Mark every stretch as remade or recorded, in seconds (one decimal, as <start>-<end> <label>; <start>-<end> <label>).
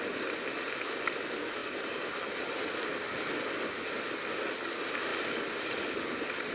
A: 0.0-6.5 recorded